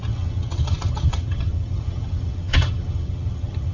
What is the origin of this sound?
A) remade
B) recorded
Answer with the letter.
A